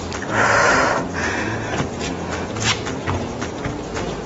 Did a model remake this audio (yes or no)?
no